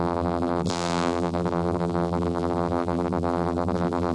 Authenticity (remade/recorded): remade